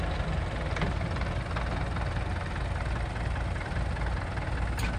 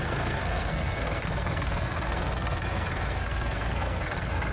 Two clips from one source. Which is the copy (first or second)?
second